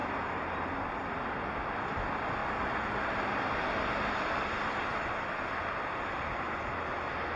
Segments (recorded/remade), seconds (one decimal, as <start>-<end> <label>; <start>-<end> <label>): 0.0-7.4 recorded